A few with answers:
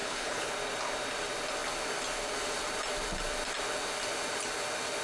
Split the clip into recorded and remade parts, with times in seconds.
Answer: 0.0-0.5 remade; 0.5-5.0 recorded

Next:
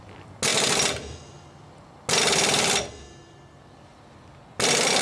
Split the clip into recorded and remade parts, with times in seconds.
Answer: 0.0-5.0 recorded

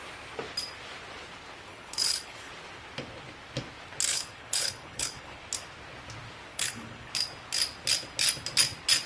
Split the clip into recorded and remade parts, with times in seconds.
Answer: 0.0-1.7 recorded; 1.7-2.5 remade; 2.5-4.1 recorded; 4.1-5.4 remade; 5.4-6.5 recorded; 6.5-7.1 remade; 7.1-9.1 recorded

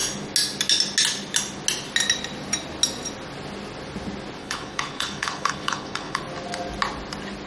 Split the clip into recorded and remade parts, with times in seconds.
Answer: 0.0-4.4 recorded; 4.4-6.2 remade; 6.2-7.5 recorded

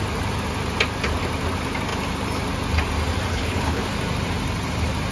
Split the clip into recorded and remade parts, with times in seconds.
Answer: 0.0-3.3 recorded; 3.3-3.8 remade; 3.8-5.1 recorded

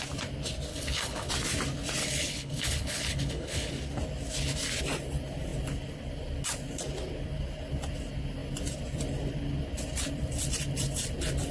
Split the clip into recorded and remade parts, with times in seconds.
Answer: 0.0-0.7 recorded; 0.7-1.3 remade; 1.3-2.0 recorded; 2.0-3.7 remade; 3.7-11.5 recorded

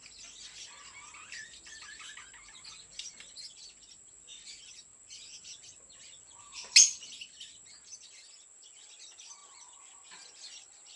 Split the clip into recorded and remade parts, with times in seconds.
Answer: 0.0-11.0 recorded

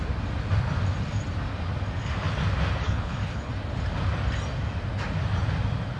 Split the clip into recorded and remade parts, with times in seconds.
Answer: 0.0-2.8 recorded; 2.8-3.5 remade; 3.5-6.0 recorded